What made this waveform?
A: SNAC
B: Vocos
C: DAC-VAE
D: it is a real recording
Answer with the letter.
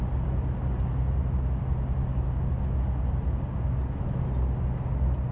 D